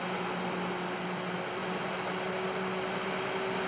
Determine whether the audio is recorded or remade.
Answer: recorded